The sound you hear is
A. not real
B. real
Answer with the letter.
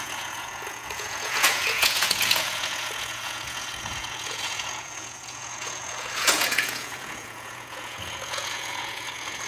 A